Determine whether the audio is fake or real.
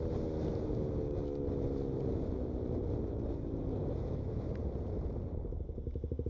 real